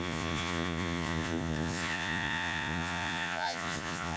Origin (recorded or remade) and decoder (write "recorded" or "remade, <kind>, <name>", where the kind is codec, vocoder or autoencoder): remade, vocoder, Vocos